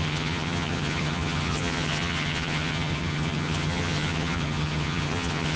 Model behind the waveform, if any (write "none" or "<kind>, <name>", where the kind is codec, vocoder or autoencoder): vocoder, HiFi-GAN